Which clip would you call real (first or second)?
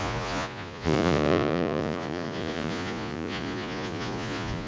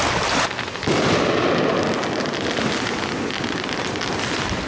second